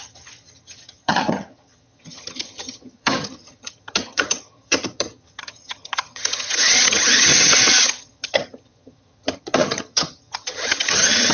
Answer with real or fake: fake